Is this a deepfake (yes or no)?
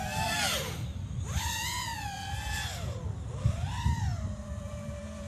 yes